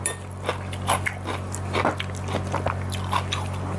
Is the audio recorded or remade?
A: recorded